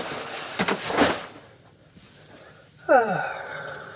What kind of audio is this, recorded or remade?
remade